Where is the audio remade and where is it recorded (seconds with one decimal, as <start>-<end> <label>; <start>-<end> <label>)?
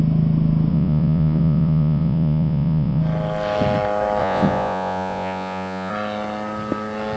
0.0-0.7 recorded; 0.7-3.0 remade; 3.0-4.2 recorded; 4.2-5.9 remade; 5.9-7.2 recorded